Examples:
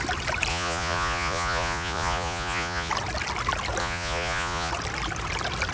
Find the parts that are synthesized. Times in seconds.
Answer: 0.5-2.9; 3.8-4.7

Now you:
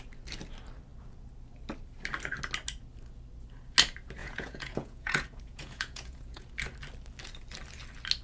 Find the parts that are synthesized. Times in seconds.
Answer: 4.2-6.5

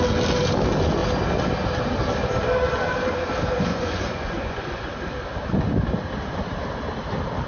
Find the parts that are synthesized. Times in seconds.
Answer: 3.7-4.9